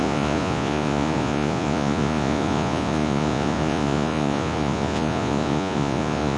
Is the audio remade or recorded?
remade